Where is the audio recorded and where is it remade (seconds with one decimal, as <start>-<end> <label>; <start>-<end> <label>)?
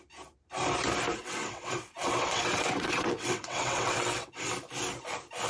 0.0-1.2 recorded; 1.2-4.5 remade; 4.5-5.5 recorded